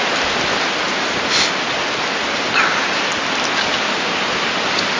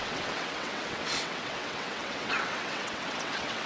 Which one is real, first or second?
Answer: first